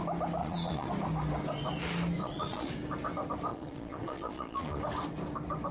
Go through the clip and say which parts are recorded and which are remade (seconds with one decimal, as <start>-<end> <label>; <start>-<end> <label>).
0.0-0.4 recorded; 0.4-0.9 remade; 0.9-2.2 recorded; 2.2-2.7 remade; 2.7-3.5 recorded; 3.5-4.8 remade; 4.8-5.7 recorded